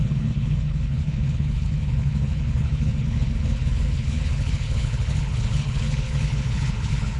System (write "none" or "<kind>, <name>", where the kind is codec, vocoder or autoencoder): codec, HILCodec